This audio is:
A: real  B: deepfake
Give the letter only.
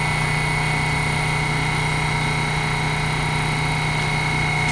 A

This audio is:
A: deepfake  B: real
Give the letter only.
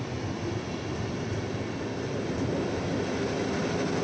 B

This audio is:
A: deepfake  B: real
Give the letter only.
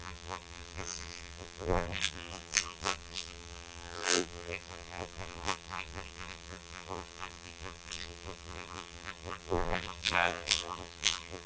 A